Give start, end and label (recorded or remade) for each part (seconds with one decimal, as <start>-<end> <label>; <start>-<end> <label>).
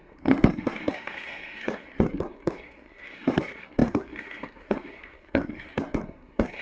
0.0-6.6 remade